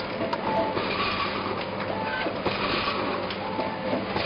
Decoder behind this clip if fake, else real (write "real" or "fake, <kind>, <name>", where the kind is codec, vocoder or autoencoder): real